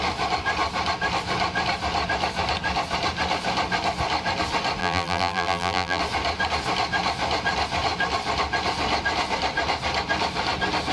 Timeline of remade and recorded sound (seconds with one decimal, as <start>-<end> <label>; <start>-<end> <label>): 0.0-4.8 recorded; 4.8-6.0 remade; 6.0-10.9 recorded